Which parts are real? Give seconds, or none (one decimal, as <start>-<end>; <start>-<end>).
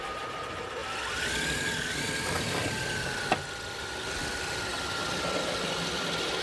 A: 0.0-6.4